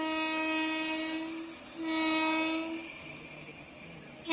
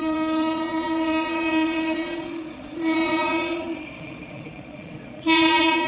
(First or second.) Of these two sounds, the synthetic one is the second